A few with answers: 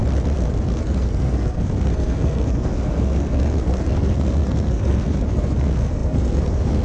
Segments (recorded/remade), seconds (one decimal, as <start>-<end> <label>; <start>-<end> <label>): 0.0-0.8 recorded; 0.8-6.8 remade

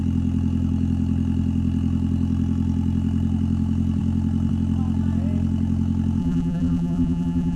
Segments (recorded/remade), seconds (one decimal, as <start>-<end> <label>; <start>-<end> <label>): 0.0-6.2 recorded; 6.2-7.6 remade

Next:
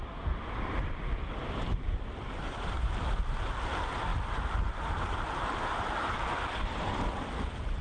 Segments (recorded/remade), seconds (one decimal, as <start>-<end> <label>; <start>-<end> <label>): 0.0-4.1 remade; 4.1-5.6 recorded; 5.6-7.8 remade

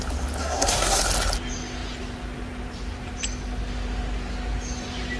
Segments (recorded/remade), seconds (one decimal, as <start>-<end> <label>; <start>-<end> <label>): 0.0-0.4 recorded; 0.4-1.0 remade; 1.0-5.2 recorded